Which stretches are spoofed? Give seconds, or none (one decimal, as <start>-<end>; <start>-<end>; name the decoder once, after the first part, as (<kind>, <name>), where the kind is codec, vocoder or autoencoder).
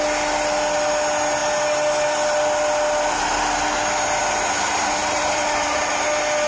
5.0-5.8 (vocoder, BigVGAN v2)